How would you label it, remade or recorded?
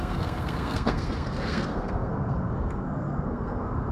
remade